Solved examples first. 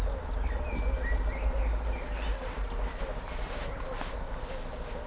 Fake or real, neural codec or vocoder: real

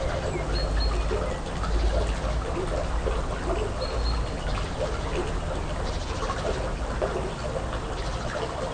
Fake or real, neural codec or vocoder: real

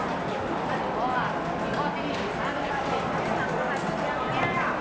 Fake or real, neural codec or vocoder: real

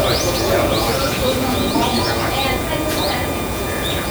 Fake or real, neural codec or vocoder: fake, vocoder, Vocos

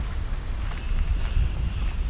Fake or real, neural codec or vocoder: real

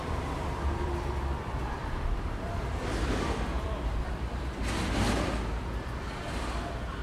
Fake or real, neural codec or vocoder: fake, vocoder, BigVGAN v2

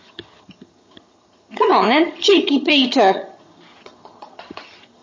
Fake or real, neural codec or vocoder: fake, vocoder, HiFi-GAN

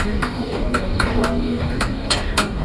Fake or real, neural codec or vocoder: fake, codec, DAC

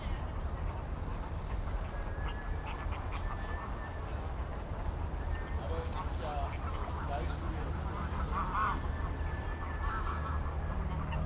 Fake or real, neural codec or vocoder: real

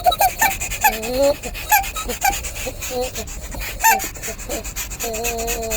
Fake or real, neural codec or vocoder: real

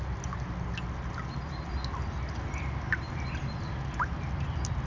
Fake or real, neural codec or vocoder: real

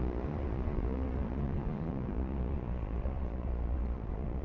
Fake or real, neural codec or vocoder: fake, vocoder, Vocos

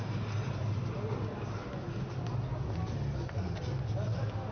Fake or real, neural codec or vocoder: real